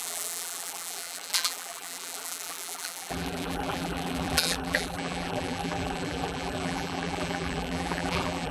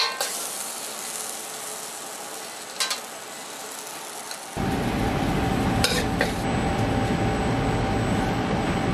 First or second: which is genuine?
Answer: second